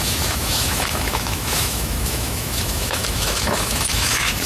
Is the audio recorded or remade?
remade